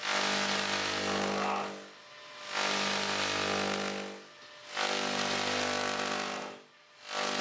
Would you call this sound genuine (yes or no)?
yes